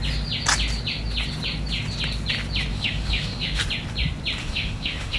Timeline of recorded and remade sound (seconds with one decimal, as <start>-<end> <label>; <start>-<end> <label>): 0.0-2.7 recorded; 2.7-3.6 remade; 3.6-4.4 recorded; 4.4-5.2 remade